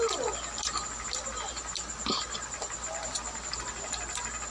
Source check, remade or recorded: recorded